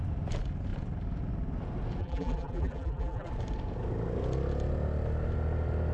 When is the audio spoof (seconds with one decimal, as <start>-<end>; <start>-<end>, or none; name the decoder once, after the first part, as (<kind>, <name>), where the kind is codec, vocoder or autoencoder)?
2.0-3.3 (vocoder, BigVGAN v2)